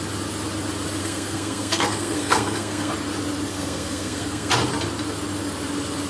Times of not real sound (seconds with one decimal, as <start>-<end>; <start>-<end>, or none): 1.0-2.9; 3.5-4.5